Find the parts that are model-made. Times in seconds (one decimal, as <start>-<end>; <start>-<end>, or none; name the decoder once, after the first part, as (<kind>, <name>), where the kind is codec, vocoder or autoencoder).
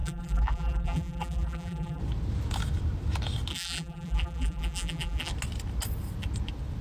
0.0-2.0 (vocoder, BigVGAN v2); 3.5-5.3